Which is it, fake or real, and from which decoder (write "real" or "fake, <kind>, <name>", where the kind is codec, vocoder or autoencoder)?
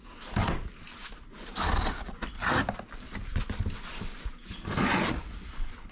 real